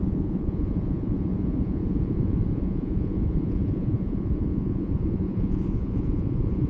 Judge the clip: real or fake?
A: fake